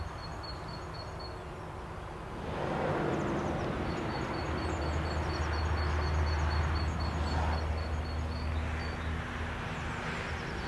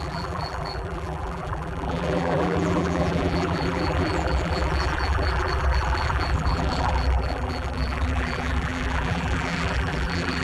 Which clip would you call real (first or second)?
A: first